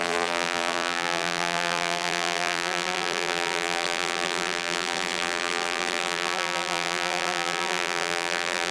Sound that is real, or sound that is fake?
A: fake